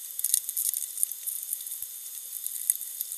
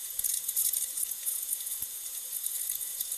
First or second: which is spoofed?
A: second